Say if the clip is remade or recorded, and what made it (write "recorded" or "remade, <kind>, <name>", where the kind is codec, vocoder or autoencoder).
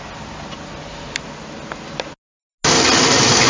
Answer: recorded